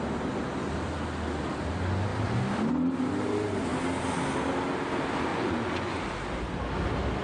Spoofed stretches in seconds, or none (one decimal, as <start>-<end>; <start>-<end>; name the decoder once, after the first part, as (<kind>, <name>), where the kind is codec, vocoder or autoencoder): 5.3-6.0 (vocoder, Vocos)